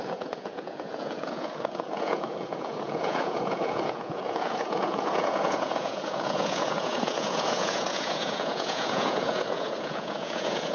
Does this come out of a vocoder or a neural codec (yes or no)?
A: yes